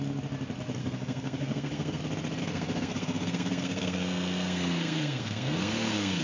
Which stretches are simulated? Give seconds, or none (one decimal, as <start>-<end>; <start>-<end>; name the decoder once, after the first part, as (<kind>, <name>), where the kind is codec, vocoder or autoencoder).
0.8-2.0 (codec, SNAC); 2.4-6.2

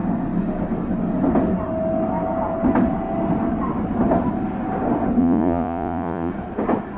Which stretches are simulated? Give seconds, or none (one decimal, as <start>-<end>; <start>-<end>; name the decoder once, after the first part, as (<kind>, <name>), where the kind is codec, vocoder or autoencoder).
5.2-6.3 (vocoder, Vocos)